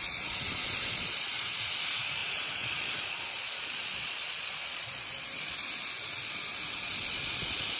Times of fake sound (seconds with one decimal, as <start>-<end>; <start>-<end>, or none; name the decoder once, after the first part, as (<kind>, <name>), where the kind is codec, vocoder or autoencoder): 0.0-7.8 (vocoder, Vocos)